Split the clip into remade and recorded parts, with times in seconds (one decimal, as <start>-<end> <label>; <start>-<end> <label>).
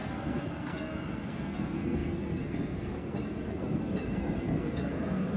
0.0-5.4 remade